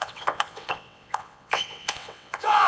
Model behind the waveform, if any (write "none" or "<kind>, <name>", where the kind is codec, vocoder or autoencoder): vocoder, WaveNeXt